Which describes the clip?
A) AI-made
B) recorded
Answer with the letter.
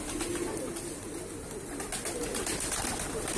B